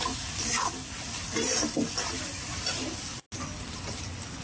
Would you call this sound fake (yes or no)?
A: no